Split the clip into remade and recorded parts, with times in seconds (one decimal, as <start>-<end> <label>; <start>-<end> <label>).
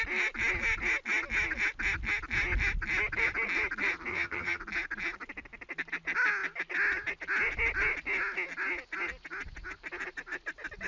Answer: 0.0-4.1 recorded; 4.1-4.6 remade; 4.6-10.9 recorded